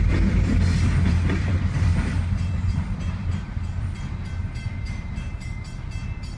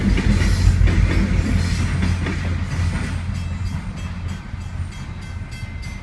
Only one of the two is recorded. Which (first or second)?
second